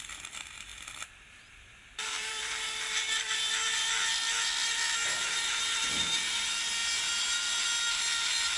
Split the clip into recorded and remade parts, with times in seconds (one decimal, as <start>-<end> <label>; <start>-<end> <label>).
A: 0.0-8.6 remade